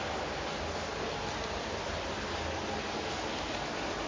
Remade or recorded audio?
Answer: recorded